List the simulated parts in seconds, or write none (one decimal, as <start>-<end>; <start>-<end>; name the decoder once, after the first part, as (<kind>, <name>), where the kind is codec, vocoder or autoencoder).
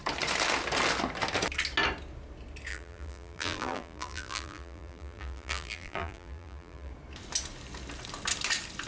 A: 2.7-6.9 (vocoder, BigVGAN v2)